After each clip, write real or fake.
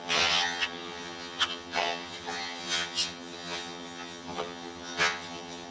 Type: fake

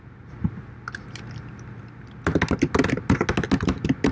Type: real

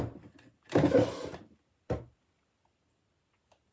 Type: real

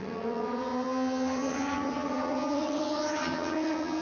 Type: fake